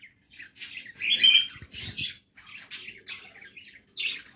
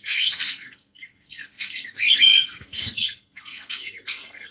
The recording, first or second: first